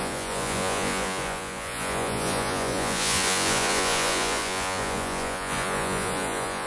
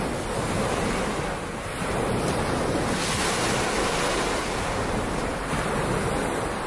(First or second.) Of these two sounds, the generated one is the first